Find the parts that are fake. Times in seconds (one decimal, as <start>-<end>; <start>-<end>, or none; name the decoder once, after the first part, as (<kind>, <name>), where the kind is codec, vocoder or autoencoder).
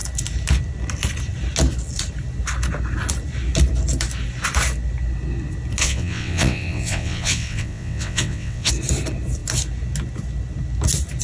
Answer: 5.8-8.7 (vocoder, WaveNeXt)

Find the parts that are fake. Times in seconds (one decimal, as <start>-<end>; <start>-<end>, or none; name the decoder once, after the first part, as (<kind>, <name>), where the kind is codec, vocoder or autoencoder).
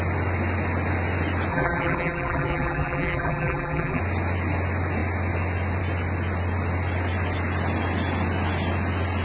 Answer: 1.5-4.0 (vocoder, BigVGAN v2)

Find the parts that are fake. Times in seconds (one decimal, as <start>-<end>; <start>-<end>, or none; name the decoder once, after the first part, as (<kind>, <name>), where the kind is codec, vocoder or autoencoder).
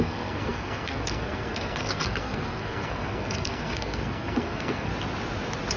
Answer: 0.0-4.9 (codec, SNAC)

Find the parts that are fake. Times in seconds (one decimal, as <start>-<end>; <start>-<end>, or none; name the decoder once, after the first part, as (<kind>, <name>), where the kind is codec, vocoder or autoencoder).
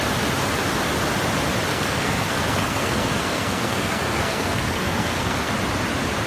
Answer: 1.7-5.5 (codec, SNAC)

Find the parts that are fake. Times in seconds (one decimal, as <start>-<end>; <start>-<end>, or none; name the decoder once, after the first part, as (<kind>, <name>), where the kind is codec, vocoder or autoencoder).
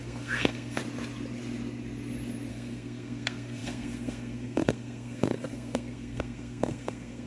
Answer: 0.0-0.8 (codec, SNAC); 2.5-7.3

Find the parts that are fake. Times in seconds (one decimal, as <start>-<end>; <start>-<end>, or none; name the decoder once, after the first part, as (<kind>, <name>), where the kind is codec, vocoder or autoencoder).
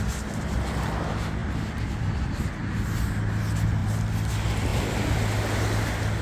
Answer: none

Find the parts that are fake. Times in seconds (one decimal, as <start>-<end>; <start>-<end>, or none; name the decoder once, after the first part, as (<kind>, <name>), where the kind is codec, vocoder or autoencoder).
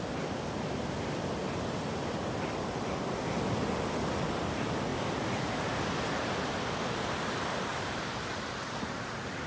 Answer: 4.9-5.9 (vocoder, BigVGAN v2); 7.7-8.3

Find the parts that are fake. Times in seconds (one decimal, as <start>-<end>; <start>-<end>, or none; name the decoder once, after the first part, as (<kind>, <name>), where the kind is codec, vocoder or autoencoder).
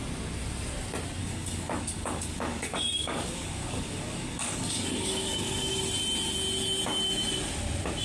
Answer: 1.2-5.8 (codec, DAC)